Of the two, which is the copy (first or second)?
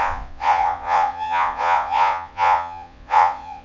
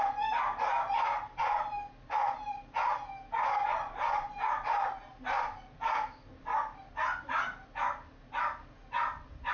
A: first